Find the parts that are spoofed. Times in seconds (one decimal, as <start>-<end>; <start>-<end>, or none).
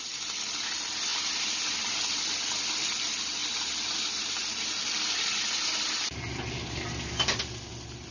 none